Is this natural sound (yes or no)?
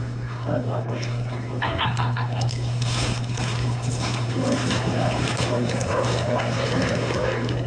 no